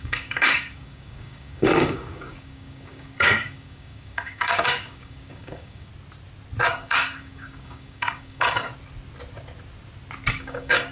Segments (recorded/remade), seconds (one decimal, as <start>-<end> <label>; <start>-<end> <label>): 0.0-5.9 remade; 5.9-6.7 recorded; 6.7-8.7 remade; 8.7-10.3 recorded; 10.3-10.9 remade